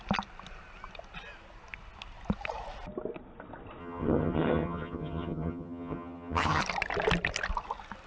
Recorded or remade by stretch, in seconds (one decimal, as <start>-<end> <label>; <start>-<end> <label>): 0.0-3.8 recorded; 3.8-6.6 remade; 6.6-8.1 recorded